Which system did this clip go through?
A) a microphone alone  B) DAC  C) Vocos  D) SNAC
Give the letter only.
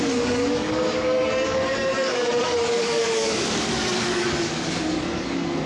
B